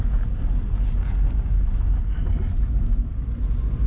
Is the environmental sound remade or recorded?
recorded